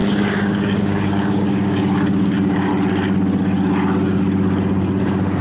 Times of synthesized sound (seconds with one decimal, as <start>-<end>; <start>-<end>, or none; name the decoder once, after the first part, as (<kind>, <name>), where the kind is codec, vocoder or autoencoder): 0.0-2.7 (codec, DAC)